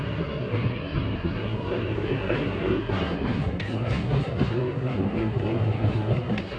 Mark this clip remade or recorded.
remade